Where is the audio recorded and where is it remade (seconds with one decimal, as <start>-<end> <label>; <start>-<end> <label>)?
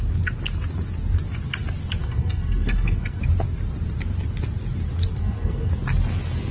0.0-2.0 recorded; 2.0-3.2 remade; 3.2-5.1 recorded; 5.1-5.7 remade; 5.7-6.5 recorded